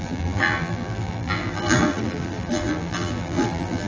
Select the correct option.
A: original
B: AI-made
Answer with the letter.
B